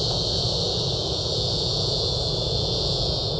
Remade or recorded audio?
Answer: remade